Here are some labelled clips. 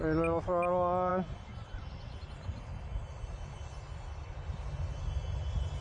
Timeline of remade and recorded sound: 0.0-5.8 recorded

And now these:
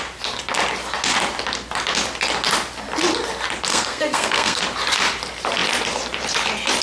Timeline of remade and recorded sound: 0.0-3.7 recorded; 3.7-4.6 remade; 4.6-6.8 recorded